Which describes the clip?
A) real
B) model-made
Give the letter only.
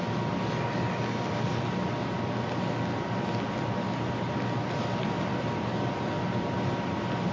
A